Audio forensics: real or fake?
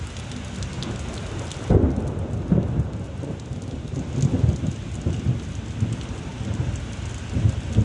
real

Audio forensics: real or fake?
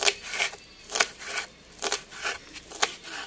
real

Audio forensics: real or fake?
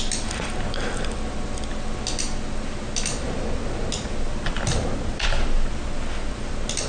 real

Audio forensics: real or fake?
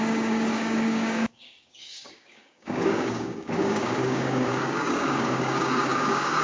fake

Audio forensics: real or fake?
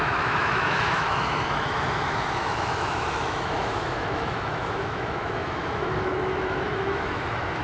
fake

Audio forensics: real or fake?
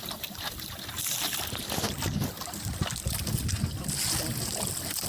real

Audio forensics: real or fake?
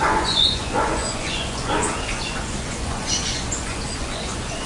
fake